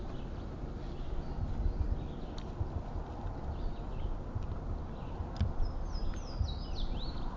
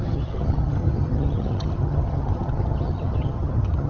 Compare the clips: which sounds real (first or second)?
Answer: first